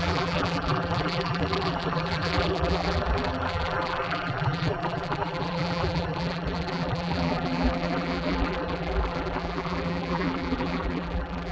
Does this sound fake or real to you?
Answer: fake